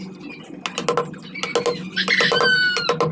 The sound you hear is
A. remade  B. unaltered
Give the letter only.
B